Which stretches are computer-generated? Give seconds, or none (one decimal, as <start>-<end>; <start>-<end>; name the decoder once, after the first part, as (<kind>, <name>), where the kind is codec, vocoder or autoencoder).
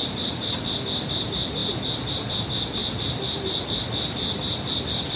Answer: 0.0-0.7 (vocoder, BigVGAN v2); 2.8-4.8